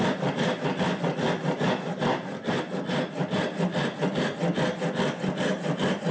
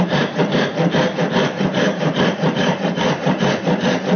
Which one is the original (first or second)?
first